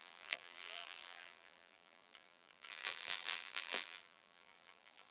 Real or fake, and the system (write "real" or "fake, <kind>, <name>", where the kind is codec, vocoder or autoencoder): fake, vocoder, BigVGAN v2